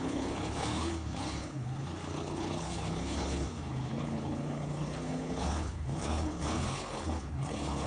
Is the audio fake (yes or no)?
yes